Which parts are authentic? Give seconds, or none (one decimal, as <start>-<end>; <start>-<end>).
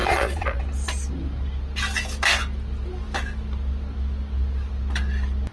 0.6-5.5